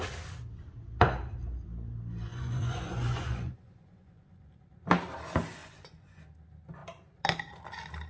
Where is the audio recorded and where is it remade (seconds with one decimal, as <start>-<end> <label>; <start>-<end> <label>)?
0.0-2.3 recorded; 2.3-4.5 remade; 4.5-5.6 recorded; 5.6-6.2 remade; 6.2-8.1 recorded